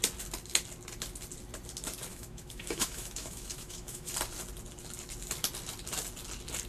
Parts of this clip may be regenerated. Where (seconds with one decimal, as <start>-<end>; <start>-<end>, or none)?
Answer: 2.1-4.1